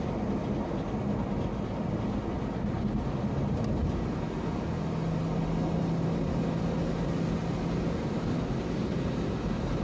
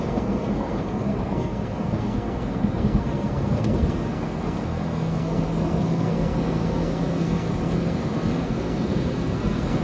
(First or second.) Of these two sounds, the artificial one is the second